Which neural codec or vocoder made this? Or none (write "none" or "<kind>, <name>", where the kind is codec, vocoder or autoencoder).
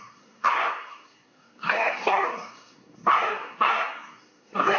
codec, SNAC